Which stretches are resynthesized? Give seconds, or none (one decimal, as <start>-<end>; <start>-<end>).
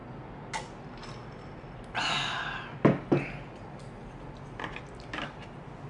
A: none